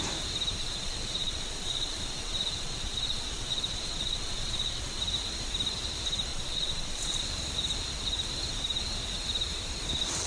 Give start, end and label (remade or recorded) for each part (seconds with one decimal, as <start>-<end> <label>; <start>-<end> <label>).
0.0-0.6 recorded; 0.6-5.0 remade; 5.0-6.3 recorded; 6.3-7.2 remade; 7.2-10.3 recorded